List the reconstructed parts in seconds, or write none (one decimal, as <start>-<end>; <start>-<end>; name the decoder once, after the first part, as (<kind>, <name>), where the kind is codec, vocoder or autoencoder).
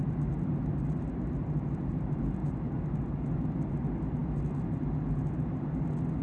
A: none